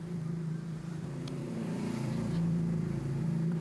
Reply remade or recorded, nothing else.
remade